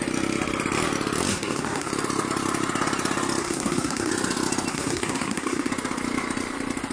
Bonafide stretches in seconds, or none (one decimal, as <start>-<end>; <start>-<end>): 0.0-1.3; 1.9-3.4; 4.1-4.7; 5.7-6.9